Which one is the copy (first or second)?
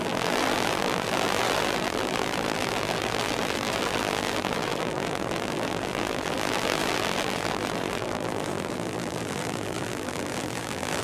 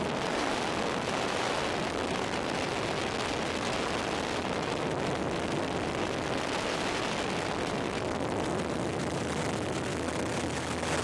first